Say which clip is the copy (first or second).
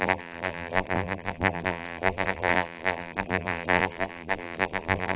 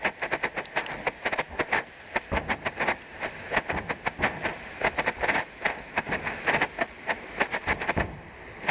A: first